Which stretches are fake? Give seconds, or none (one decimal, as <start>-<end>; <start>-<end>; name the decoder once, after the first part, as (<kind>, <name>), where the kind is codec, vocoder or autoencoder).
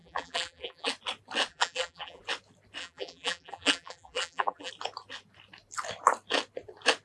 0.0-0.9 (vocoder, BigVGAN v2); 1.5-2.2; 2.8-4.7